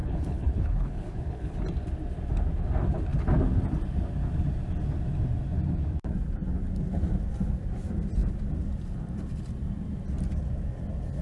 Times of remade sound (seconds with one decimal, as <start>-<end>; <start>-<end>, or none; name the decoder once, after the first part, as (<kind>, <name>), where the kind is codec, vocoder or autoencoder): 0.0-1.6 (codec, HILCodec)